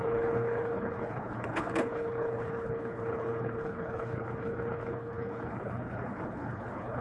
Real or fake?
fake